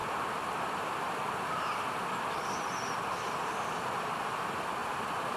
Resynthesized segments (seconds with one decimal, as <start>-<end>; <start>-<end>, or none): none